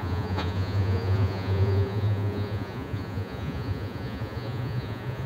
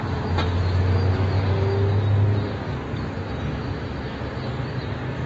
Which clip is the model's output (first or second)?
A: first